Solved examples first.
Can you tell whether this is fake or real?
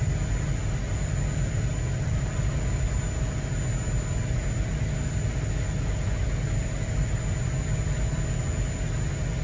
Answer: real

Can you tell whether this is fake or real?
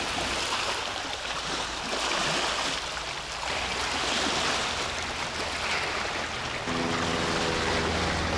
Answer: real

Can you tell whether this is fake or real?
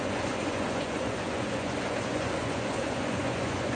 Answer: fake